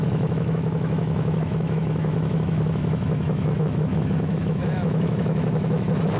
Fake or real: fake